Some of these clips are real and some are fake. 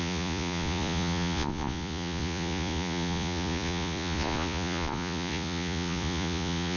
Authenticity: fake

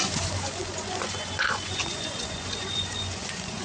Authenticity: fake